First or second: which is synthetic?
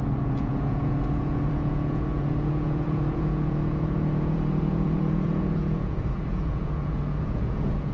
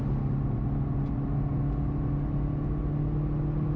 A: first